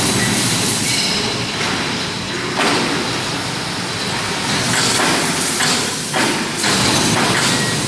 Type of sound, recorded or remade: recorded